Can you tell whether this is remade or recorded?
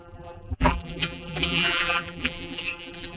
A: remade